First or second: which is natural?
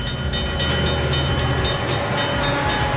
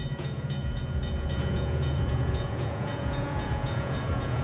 first